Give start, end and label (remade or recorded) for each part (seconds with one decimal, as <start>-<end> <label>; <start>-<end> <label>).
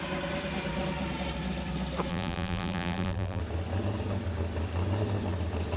0.0-2.1 recorded; 2.1-3.4 remade; 3.4-5.8 recorded